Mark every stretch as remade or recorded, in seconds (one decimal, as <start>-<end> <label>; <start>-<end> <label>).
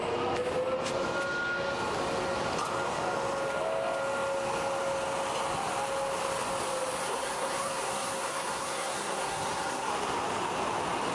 0.0-7.0 recorded; 7.0-9.9 remade; 9.9-11.1 recorded